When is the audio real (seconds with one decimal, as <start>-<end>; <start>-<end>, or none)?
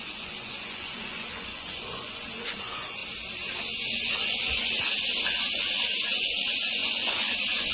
3.0-3.6